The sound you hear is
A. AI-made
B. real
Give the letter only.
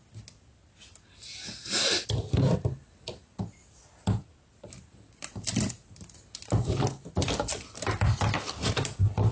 B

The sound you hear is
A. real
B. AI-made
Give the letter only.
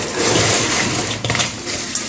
B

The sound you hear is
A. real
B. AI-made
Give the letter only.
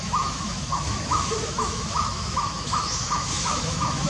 B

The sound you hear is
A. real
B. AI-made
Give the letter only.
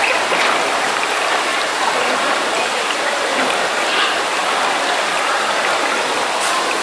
A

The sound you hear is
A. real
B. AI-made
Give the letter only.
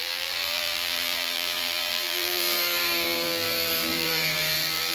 B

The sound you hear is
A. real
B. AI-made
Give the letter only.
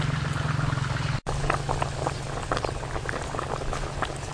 A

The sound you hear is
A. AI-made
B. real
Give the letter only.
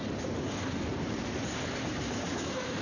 A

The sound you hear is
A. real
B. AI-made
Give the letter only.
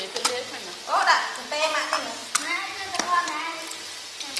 A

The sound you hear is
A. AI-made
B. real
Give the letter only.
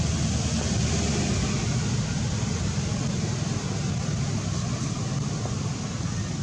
B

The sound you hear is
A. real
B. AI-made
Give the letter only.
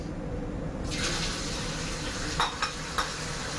A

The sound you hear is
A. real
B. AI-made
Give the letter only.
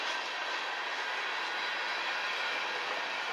A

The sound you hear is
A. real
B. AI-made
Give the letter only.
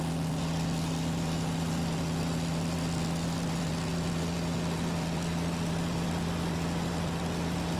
A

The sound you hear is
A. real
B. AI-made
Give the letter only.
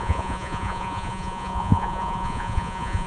B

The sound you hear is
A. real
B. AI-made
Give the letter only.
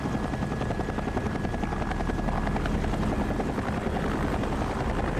A